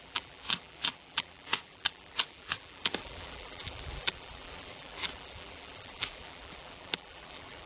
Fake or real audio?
fake